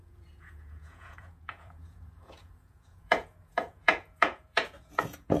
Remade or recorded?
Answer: remade